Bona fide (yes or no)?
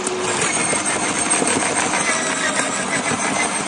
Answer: yes